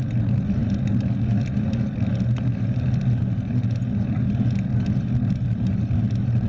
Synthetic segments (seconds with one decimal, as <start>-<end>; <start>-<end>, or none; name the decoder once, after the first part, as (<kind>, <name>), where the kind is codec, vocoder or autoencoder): none